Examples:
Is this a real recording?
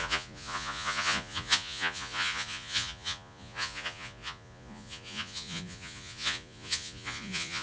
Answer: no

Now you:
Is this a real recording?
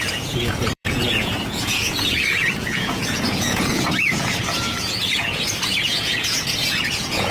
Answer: no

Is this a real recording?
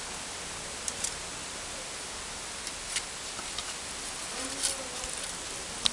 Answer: yes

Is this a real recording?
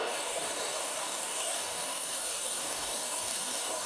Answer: no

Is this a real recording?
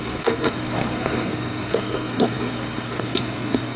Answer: no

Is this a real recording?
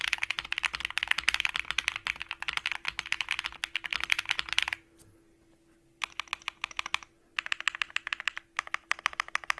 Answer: yes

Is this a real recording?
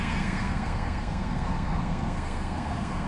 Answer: no